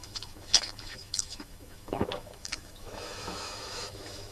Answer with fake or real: fake